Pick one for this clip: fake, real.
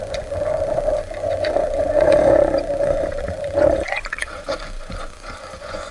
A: fake